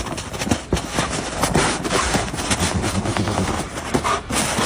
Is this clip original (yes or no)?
yes